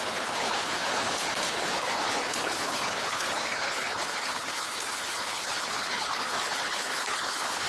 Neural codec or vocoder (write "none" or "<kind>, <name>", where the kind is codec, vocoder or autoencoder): codec, HILCodec